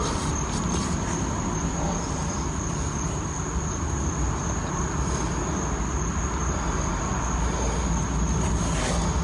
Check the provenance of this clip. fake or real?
real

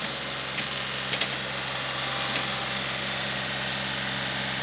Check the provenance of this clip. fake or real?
real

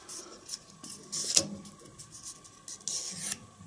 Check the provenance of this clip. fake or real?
real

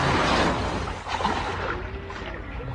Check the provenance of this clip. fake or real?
real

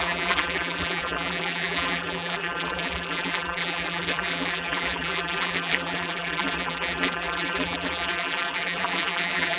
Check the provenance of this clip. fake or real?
fake